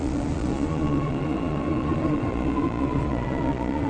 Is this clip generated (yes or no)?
yes